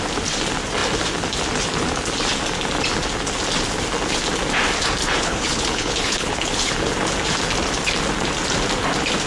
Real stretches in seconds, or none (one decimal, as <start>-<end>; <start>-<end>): 0.0-5.0; 6.7-9.3